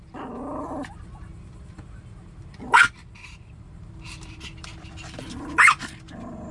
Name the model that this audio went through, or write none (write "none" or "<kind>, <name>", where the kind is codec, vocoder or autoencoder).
vocoder, BigVGAN v2